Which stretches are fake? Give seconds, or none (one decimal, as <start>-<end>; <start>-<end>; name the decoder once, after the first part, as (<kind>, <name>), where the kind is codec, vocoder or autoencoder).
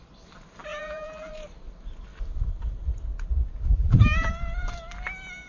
0.7-1.3 (vocoder, BigVGAN v2); 3.7-4.3